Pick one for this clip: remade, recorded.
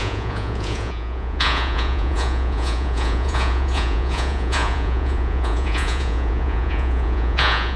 remade